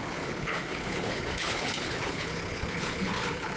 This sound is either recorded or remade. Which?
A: remade